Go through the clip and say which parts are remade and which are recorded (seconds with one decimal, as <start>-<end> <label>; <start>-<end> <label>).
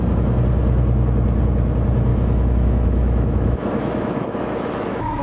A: 0.0-2.1 recorded; 2.1-5.2 remade